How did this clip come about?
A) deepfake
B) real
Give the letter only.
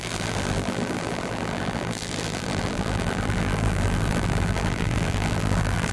A